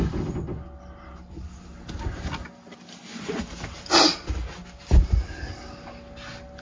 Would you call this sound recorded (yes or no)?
yes